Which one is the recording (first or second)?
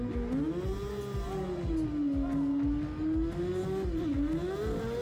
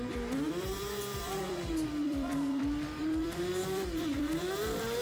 first